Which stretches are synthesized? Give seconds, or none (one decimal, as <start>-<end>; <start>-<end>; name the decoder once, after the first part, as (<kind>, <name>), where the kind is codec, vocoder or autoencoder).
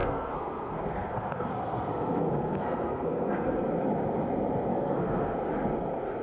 0.0-3.6 (codec, SNAC); 4.7-5.5